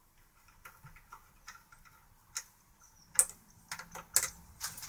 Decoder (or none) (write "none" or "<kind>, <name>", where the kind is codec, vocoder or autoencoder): none